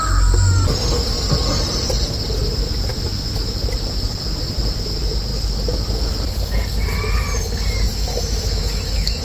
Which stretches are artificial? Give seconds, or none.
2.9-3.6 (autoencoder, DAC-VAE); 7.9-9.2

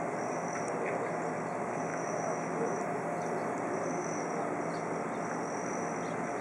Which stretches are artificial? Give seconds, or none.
1.9-2.8 (autoencoder, DAC-VAE)

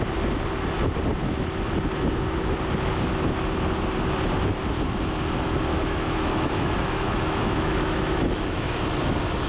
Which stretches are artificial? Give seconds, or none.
5.7-8.8 (autoencoder, DAC-VAE)

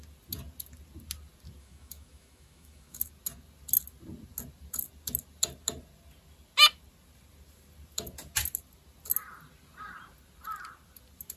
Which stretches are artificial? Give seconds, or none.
1.6-3.1 (autoencoder, DAC-VAE)

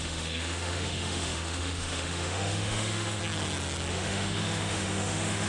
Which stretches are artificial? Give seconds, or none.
0.0-3.2 (autoencoder, DAC-VAE); 3.9-5.5